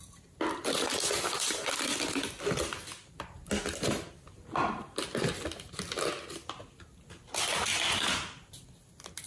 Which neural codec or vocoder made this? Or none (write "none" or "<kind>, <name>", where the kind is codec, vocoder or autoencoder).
none